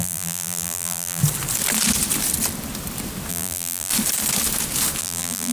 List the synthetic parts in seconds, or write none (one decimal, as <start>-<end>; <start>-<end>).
0.0-1.2; 3.3-3.9; 5.0-5.5